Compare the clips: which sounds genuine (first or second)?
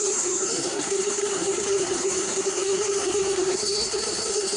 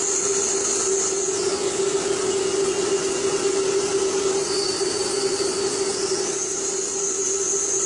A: second